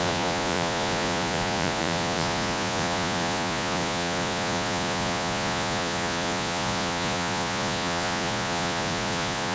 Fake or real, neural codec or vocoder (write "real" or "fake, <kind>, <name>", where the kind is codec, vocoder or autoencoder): fake, vocoder, Vocos